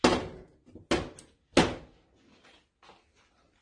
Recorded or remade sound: recorded